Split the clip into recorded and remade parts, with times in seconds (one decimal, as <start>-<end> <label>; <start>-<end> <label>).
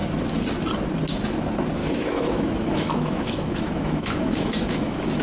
0.0-1.8 recorded; 1.8-5.2 remade